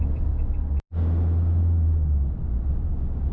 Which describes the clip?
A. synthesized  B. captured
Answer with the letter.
B